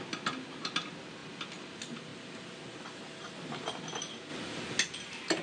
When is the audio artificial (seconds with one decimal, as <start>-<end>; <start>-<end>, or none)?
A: none